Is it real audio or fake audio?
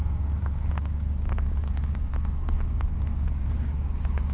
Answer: fake